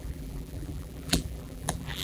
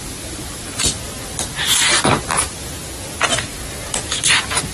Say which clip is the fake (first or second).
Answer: first